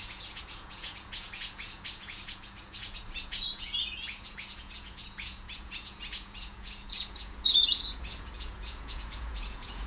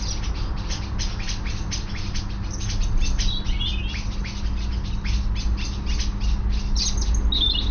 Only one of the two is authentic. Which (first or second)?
second